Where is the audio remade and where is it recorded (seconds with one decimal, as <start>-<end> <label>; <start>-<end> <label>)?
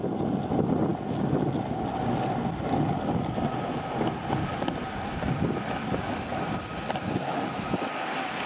0.0-8.5 recorded